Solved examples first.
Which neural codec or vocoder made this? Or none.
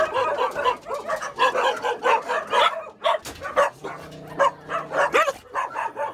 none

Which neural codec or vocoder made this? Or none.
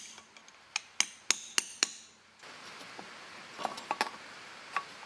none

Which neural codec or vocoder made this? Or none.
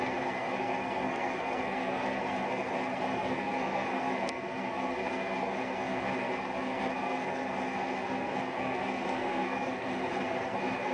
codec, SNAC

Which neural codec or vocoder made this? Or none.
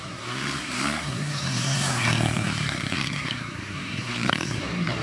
codec, SNAC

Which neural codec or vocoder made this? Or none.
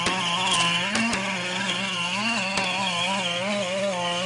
none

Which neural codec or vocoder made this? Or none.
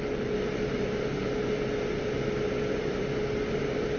none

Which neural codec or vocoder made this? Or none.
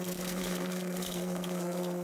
codec, SNAC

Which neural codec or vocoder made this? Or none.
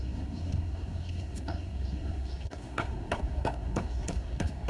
codec, SNAC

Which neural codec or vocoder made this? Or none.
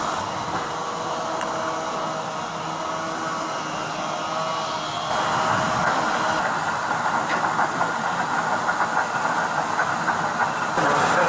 none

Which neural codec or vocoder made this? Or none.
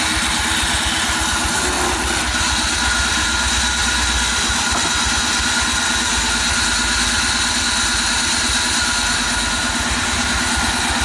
none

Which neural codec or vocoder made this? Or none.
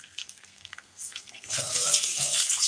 codec, SNAC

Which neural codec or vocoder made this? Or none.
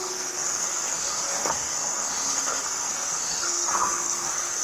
codec, SNAC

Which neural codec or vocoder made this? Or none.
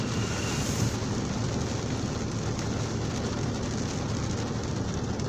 none